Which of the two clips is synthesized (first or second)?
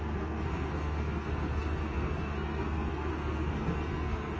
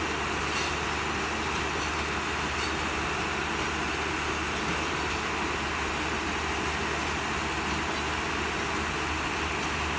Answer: first